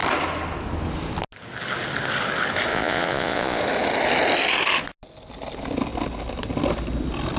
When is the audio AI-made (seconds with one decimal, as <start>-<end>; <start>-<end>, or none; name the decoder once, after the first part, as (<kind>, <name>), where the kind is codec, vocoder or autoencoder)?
2.7-3.6 (vocoder, Vocos)

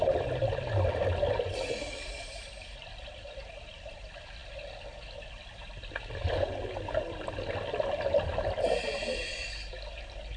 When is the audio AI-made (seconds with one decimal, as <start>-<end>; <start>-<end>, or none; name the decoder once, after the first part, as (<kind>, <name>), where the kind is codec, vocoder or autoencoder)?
none